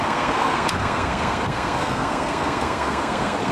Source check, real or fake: fake